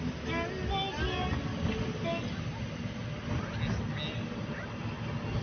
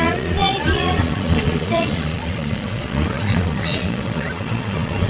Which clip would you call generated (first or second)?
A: second